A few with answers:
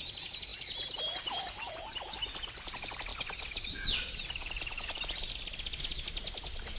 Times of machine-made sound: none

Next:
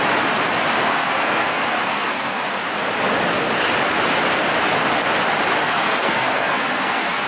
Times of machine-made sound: 0.9-2.4 (codec, SNAC); 5.6-7.3

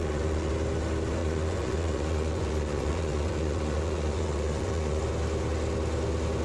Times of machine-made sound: 0.0-0.5 (vocoder, Vocos); 1.2-5.0

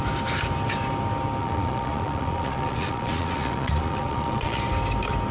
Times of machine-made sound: 1.4-4.6 (vocoder, Vocos)

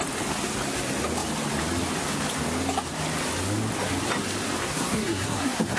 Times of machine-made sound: 4.6-5.8 (codec, SNAC)

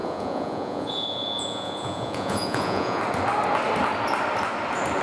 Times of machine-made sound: 0.0-3.0 (vocoder, Vocos)

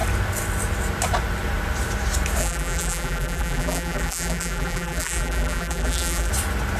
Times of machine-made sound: 2.4-6.3 (vocoder, BigVGAN v2)